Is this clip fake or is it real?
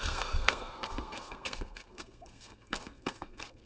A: fake